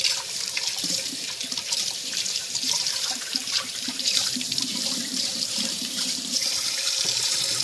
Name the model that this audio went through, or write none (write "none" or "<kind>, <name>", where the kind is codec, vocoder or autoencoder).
vocoder, BigVGAN v2